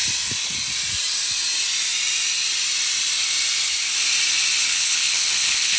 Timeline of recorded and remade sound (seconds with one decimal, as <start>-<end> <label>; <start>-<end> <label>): 0.0-4.7 recorded; 4.7-5.8 remade